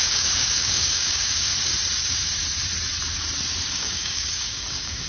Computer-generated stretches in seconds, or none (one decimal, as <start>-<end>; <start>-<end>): 0.0-1.5; 3.7-5.1